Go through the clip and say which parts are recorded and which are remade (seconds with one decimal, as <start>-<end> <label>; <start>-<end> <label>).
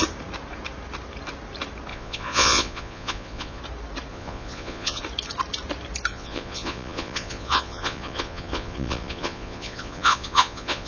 0.0-1.9 recorded; 1.9-3.6 remade; 3.6-4.1 recorded; 4.1-5.0 remade; 5.0-6.1 recorded; 6.1-10.9 remade